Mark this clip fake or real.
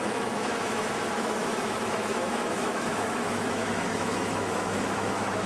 fake